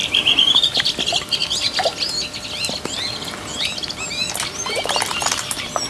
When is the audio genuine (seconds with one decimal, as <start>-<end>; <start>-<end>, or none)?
0.7-5.9